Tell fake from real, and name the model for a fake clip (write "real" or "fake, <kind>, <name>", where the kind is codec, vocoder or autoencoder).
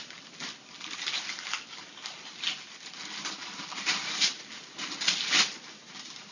real